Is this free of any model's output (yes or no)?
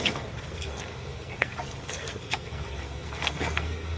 no